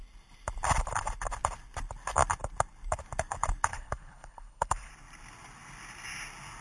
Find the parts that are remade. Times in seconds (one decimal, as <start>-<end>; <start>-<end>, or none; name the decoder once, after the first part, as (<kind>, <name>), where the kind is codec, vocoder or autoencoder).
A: 3.7-4.9 (codec, HILCodec)